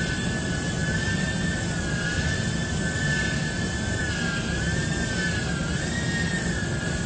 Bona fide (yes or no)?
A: yes